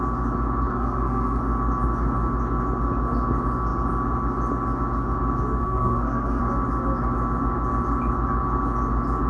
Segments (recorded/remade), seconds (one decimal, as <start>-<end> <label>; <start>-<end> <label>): 0.0-0.7 recorded; 0.7-1.4 remade; 1.4-5.6 recorded; 5.6-6.4 remade; 6.4-9.3 recorded